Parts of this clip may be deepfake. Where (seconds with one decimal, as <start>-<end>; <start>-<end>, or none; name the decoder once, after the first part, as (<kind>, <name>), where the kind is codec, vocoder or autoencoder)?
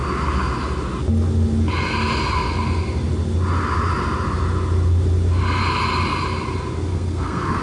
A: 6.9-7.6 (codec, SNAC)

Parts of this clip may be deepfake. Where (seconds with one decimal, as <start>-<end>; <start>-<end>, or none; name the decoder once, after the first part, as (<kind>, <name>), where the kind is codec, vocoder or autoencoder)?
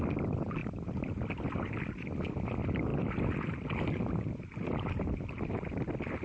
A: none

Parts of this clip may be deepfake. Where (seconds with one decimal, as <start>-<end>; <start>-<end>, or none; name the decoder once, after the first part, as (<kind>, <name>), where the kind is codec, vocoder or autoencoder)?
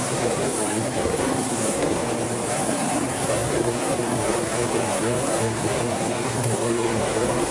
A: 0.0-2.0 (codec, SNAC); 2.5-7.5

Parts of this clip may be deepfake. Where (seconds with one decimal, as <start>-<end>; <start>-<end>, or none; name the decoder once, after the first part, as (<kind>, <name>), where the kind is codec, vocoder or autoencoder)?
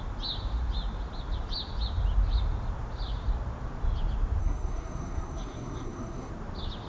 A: 4.4-6.3 (codec, SNAC)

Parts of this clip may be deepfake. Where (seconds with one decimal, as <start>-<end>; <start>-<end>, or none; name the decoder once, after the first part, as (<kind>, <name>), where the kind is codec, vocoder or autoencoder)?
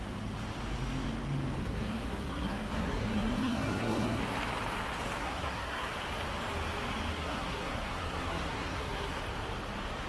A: 1.6-4.2 (codec, SNAC); 5.2-5.9; 7.1-9.2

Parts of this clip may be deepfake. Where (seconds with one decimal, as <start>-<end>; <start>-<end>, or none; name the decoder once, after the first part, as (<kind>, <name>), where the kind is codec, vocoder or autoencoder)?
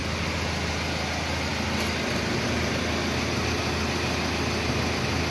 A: none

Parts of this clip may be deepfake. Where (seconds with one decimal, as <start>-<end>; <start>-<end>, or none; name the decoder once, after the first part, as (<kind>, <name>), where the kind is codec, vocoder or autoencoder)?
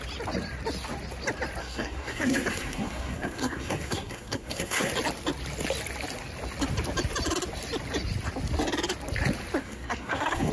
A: 1.6-4.9 (codec, SNAC); 9.6-10.5